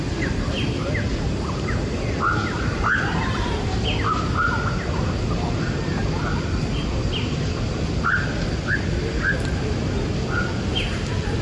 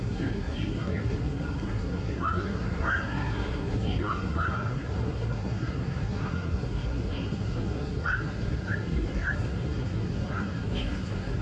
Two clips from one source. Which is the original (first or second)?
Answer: first